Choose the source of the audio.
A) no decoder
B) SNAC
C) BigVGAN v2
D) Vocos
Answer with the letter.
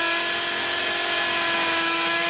A